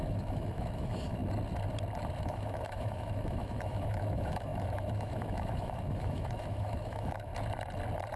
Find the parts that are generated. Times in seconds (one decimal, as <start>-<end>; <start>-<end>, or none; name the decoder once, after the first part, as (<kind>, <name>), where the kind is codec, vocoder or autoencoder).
0.0-1.2 (autoencoder, DAC-VAE); 2.2-7.3